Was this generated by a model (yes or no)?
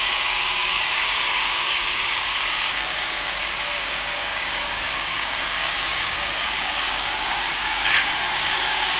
yes